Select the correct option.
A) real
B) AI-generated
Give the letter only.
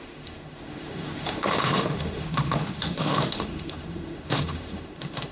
B